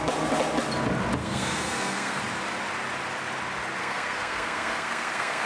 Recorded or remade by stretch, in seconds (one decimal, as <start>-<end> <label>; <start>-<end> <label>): 0.0-1.2 recorded; 1.2-2.2 remade; 2.2-3.8 recorded; 3.8-5.5 remade